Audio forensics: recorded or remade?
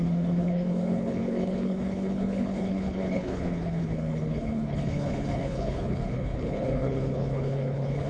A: remade